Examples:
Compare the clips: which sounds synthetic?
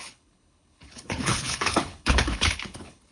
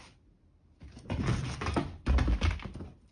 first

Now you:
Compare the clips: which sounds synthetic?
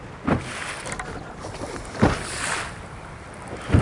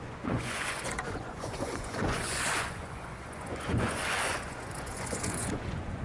second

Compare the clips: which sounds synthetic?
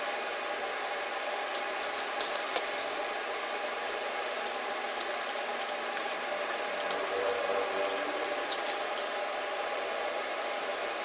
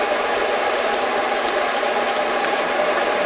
second